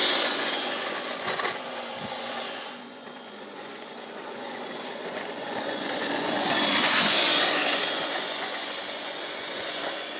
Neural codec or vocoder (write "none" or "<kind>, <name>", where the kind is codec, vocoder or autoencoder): vocoder, Vocos